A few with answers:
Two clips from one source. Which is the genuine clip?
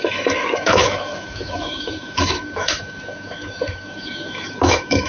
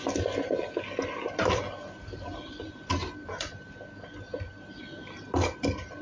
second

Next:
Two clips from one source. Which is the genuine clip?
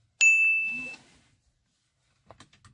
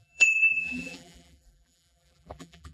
first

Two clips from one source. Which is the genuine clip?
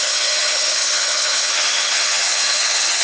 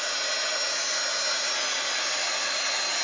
second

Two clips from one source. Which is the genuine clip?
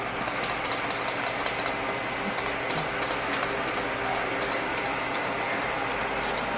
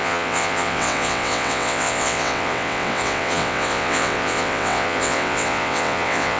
first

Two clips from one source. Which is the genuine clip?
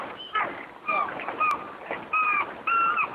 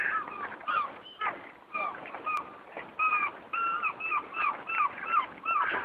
first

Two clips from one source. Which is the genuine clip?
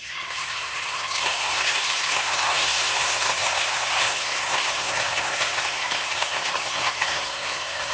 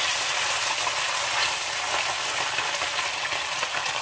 second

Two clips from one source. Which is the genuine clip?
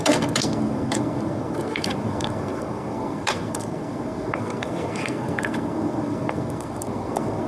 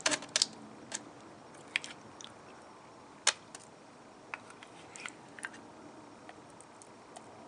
second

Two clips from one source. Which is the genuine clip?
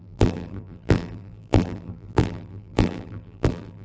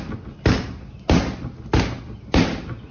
second